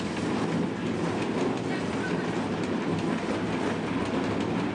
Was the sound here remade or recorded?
recorded